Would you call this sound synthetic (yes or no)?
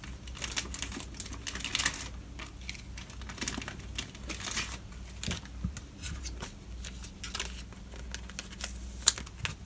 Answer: no